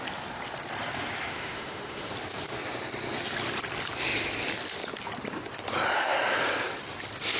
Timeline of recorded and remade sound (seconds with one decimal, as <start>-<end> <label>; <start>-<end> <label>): 0.0-1.3 recorded; 1.3-2.1 remade; 2.1-7.4 recorded